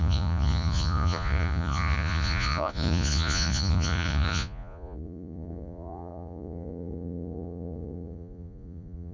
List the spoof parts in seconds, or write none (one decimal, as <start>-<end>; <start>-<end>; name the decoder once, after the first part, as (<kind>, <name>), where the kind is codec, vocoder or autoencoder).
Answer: 0.0-9.1 (vocoder, Vocos)